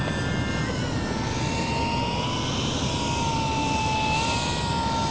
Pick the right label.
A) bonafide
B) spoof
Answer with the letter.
A